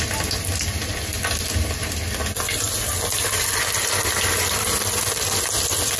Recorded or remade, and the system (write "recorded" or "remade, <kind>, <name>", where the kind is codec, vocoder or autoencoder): recorded